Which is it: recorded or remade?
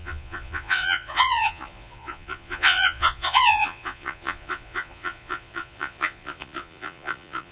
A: remade